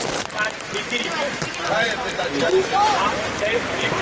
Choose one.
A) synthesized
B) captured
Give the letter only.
A